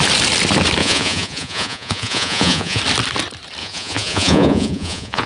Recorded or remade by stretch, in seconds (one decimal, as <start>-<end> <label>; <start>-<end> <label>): 0.0-0.8 recorded; 0.8-2.8 remade; 2.8-3.6 recorded; 3.6-5.3 remade

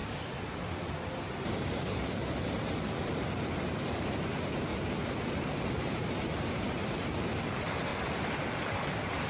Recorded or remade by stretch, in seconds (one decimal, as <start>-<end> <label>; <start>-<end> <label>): 0.0-1.5 recorded; 1.5-4.7 remade; 4.7-5.3 recorded; 5.3-7.9 remade; 7.9-9.3 recorded